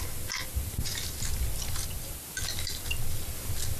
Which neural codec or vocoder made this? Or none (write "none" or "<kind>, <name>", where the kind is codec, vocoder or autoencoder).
none